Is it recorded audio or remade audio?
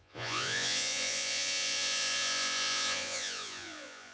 remade